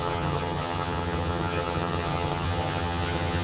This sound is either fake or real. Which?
fake